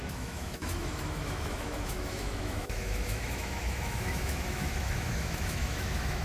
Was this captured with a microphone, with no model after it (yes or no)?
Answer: no